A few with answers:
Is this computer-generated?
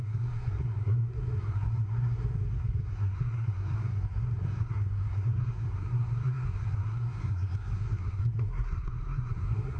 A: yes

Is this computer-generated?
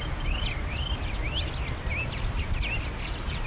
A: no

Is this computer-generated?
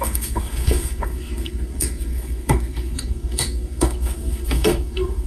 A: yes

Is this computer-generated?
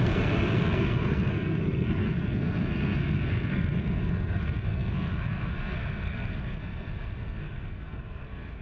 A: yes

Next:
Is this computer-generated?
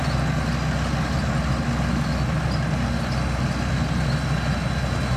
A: no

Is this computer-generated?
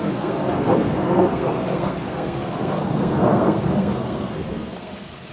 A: yes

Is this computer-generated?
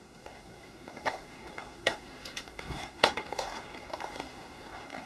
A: yes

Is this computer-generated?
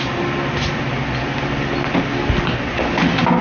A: no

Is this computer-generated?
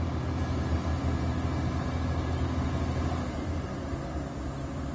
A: no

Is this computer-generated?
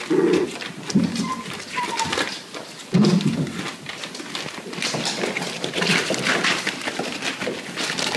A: no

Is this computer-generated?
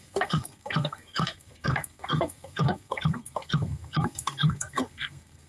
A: yes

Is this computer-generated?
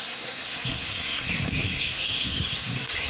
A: yes